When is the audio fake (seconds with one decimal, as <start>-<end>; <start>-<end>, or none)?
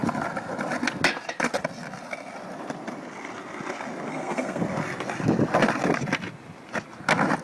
4.1-4.6